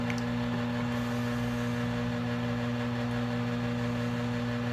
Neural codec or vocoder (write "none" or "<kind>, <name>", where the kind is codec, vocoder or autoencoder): none